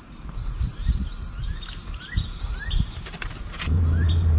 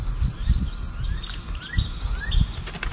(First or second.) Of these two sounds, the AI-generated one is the first